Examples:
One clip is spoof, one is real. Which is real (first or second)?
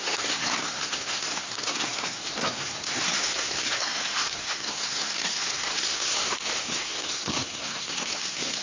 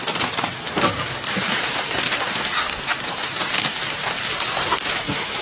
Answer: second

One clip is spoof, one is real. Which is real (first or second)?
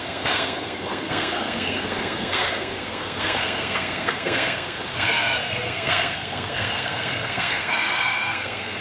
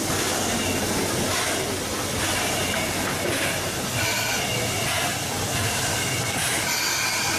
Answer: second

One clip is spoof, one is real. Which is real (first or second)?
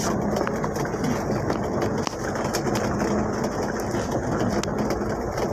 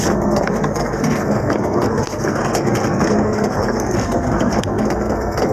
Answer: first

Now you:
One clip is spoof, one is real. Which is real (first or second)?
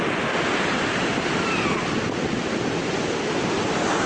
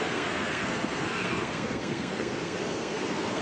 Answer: first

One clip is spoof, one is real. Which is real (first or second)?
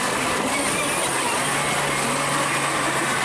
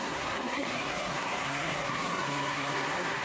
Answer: first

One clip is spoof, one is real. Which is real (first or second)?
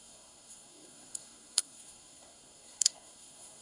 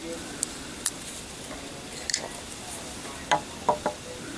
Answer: second